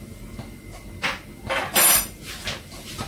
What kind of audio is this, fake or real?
real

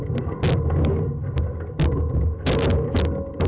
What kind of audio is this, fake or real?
real